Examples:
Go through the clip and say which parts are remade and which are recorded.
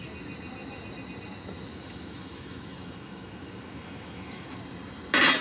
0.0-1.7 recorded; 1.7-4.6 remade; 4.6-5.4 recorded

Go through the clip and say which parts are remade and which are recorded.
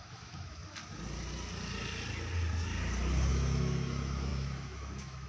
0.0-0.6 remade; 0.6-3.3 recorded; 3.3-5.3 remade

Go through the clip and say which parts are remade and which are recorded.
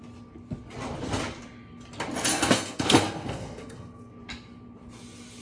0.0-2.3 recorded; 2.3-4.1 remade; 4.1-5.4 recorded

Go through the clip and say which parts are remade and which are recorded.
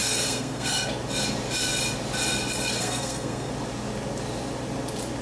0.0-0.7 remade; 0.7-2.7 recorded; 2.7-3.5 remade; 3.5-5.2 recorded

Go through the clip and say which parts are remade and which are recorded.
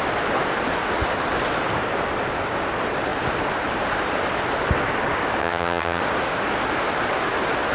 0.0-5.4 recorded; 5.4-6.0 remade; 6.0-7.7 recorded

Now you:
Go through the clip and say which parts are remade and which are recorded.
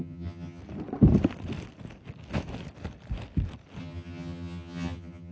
0.0-0.6 remade; 0.6-3.8 recorded; 3.8-5.3 remade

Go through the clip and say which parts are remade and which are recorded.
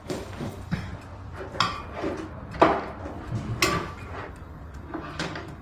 0.0-0.9 remade; 0.9-4.3 recorded; 4.3-5.6 remade